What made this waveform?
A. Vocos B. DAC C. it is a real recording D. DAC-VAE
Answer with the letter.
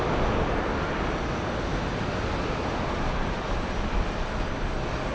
C